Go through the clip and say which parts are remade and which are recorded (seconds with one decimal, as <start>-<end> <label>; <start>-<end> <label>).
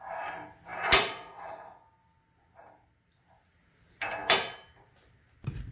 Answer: 0.0-5.7 recorded